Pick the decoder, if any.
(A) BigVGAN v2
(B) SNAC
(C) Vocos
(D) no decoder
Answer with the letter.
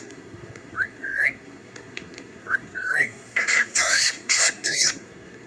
B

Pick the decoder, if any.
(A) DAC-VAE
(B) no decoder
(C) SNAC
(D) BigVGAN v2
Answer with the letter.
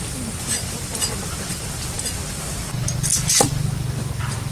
B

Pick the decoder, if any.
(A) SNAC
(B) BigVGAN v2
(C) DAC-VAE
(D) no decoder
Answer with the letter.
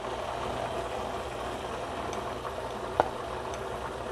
D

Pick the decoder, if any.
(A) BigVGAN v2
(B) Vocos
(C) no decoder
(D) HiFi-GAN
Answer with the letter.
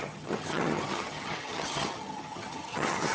D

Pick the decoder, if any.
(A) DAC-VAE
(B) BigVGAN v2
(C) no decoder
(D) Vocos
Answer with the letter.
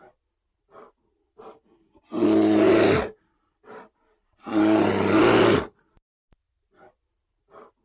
C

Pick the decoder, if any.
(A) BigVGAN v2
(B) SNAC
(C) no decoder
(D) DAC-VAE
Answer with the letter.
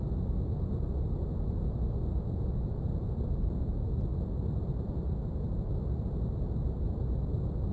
C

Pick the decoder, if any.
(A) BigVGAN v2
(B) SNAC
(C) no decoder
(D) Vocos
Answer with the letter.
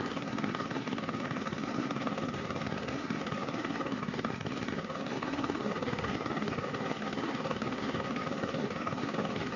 B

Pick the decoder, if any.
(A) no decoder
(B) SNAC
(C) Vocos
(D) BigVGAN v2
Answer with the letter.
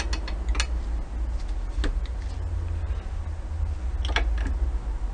A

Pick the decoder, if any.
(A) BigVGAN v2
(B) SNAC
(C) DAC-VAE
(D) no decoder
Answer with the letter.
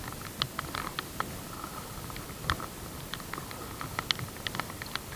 D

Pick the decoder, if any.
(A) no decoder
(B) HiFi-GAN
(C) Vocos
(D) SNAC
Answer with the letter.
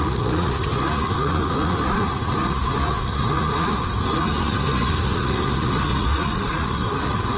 C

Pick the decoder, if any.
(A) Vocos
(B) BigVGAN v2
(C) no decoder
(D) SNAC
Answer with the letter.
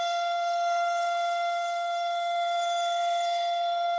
D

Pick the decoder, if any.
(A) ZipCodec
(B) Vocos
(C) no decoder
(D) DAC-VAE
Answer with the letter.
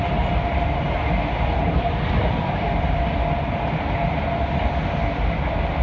C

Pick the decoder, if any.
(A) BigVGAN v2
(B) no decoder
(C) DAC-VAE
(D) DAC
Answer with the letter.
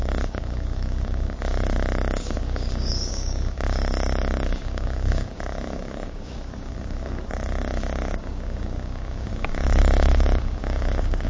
D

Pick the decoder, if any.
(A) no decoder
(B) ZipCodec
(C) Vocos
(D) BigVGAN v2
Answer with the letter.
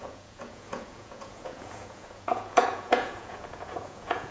C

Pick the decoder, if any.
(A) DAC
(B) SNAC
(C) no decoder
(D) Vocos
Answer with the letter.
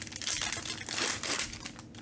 C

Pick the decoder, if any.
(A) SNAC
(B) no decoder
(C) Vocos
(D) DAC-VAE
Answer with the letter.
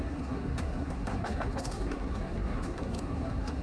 A